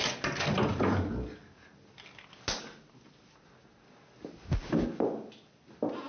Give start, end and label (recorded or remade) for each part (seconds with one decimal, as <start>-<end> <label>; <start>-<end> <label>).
0.0-6.1 recorded